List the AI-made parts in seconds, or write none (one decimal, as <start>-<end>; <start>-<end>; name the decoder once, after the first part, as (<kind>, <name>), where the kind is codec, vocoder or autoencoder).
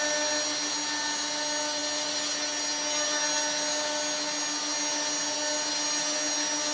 none